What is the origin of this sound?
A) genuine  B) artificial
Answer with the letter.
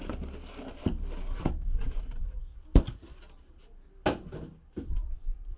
A